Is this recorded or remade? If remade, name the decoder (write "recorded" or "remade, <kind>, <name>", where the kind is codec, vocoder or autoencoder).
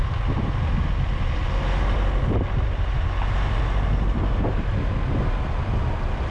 recorded